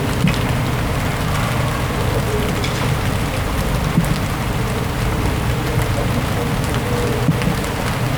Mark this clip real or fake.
real